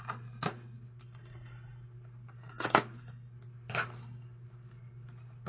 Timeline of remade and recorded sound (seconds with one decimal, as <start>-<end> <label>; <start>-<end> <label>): 0.0-5.5 recorded

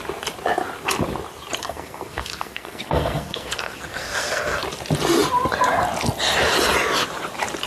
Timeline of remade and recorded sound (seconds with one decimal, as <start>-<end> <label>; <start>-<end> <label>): 0.0-1.6 recorded; 1.6-4.6 remade; 4.6-7.7 recorded

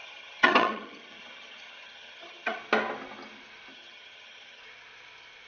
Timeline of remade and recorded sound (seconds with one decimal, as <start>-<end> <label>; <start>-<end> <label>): 0.0-2.6 remade; 2.6-3.7 recorded; 3.7-4.6 remade; 4.6-5.5 recorded

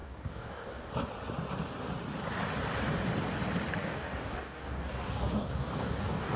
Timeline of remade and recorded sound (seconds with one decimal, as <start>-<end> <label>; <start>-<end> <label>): 0.0-0.9 remade; 0.9-3.8 recorded; 3.8-6.4 remade